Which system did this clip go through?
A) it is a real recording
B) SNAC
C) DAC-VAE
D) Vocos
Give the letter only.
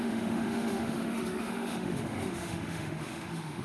C